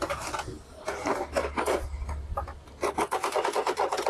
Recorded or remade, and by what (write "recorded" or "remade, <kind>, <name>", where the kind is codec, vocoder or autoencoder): recorded